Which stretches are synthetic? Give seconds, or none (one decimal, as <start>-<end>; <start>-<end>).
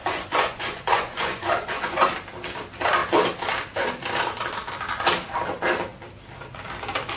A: 0.0-2.1